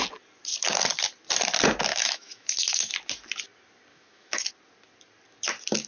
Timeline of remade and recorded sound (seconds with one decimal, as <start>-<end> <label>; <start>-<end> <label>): 0.0-1.9 recorded; 1.9-2.9 remade; 2.9-3.9 recorded; 3.9-4.4 remade; 4.4-5.9 recorded